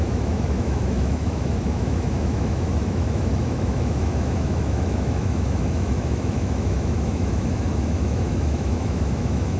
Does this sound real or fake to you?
fake